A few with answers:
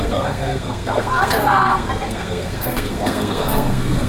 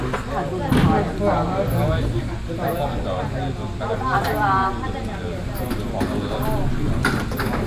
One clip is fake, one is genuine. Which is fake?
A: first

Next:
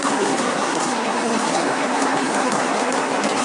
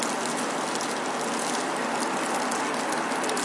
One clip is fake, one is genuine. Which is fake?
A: first